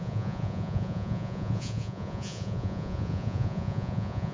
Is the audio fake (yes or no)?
yes